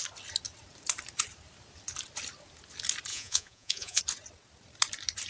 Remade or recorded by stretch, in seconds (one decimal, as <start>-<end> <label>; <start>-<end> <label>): 0.0-3.1 recorded; 3.1-4.0 remade; 4.0-5.3 recorded